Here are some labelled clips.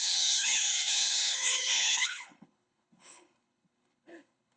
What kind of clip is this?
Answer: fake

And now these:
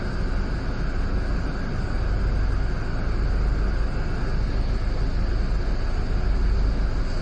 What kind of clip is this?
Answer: real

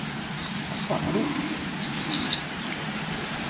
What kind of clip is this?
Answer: real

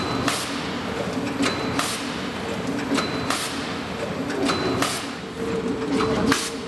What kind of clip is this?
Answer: real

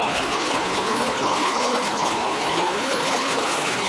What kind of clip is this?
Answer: fake